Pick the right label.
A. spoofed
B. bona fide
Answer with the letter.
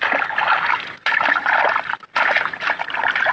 B